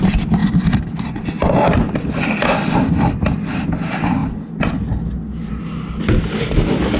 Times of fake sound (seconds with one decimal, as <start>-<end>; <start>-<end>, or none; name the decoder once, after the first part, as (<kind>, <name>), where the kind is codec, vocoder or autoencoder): none